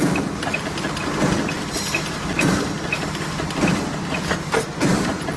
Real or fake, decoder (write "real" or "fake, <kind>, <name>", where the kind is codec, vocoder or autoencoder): real